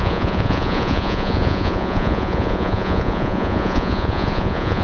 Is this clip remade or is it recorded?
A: remade